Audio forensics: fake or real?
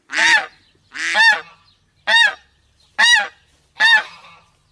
real